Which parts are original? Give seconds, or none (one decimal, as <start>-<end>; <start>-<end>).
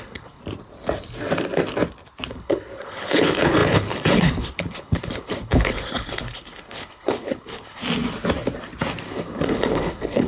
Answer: 0.4-2.3; 7.8-9.0